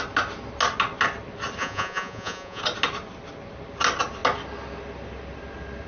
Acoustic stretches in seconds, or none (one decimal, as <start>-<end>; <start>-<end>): 0.0-1.6; 2.6-5.9